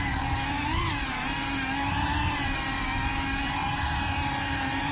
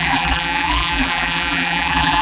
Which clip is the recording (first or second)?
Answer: first